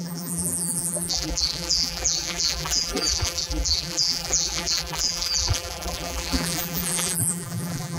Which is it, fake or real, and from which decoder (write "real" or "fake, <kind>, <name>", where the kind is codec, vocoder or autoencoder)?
fake, vocoder, BigVGAN v2